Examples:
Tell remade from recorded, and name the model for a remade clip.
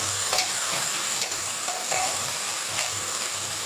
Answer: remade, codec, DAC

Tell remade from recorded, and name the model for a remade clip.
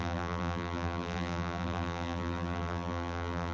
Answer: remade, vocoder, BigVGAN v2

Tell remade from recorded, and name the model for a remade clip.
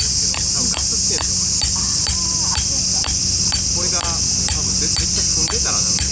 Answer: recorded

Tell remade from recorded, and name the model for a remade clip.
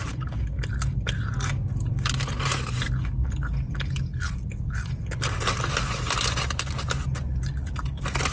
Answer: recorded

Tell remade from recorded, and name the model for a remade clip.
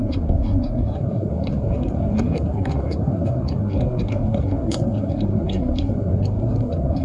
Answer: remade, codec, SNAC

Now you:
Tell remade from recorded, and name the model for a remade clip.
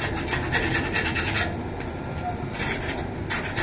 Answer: recorded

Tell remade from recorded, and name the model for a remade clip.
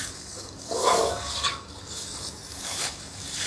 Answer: remade, codec, DAC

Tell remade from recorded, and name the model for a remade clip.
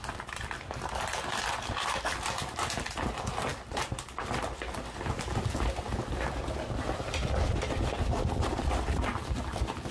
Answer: remade, vocoder, BigVGAN v2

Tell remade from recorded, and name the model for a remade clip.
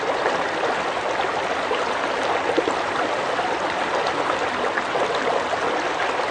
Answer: recorded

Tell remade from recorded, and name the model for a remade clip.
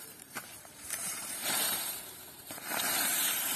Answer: remade, vocoder, BigVGAN v2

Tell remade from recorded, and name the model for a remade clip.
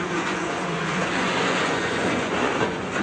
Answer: remade, vocoder, Vocos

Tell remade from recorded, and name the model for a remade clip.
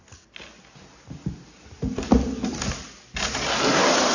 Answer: recorded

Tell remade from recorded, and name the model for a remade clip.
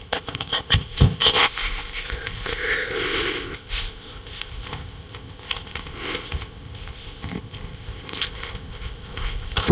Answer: remade, codec, ZipCodec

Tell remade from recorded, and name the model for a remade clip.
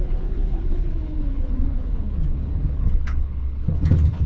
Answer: remade, codec, HILCodec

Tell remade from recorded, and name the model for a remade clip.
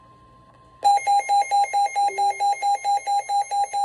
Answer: recorded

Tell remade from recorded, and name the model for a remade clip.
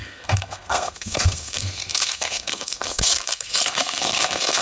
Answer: remade, codec, SNAC